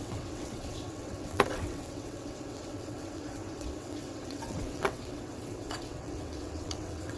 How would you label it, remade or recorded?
remade